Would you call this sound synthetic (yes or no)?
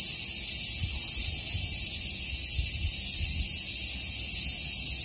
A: no